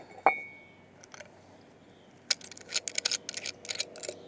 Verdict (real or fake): real